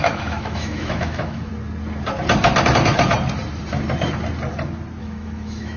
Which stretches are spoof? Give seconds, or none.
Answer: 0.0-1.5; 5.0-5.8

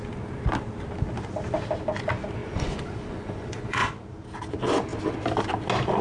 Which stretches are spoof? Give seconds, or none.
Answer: 2.4-3.9

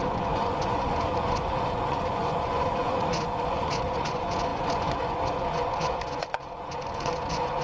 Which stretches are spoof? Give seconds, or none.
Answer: 0.0-7.6

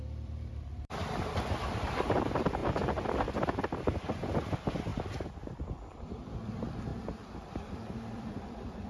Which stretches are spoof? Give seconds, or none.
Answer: 0.0-8.9

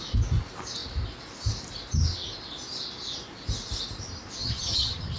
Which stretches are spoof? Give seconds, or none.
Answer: 4.4-5.2

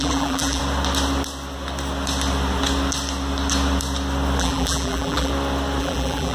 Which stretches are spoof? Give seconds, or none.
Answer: 0.0-0.6; 4.4-5.3; 5.8-6.3

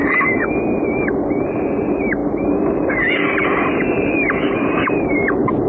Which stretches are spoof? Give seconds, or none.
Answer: none